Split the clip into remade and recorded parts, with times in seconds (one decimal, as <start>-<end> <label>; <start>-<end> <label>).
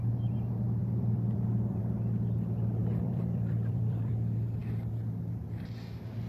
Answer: 0.0-0.8 recorded; 0.8-1.8 remade; 1.8-2.8 recorded; 2.8-4.1 remade; 4.1-6.3 recorded